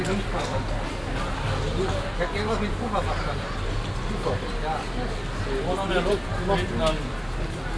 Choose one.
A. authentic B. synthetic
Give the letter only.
A